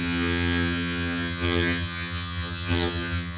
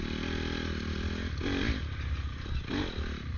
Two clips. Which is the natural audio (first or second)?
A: second